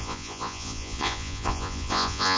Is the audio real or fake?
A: fake